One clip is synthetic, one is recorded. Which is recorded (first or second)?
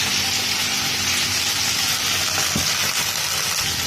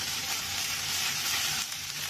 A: first